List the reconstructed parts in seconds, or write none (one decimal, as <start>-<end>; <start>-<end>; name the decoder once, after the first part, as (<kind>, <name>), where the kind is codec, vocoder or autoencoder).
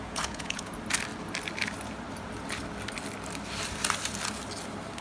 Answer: 0.0-0.7 (vocoder, Vocos)